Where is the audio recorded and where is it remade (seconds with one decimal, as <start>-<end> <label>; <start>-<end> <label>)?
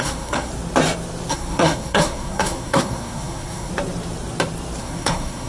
0.0-0.5 remade; 0.5-1.3 recorded; 1.3-3.7 remade; 3.7-4.8 recorded; 4.8-5.5 remade